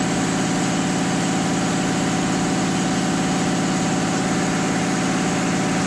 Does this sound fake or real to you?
real